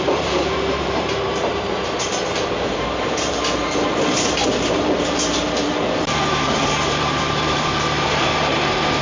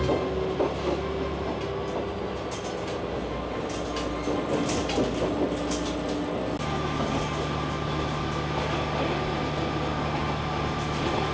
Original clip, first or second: second